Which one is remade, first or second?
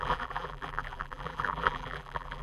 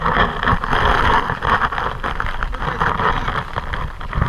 first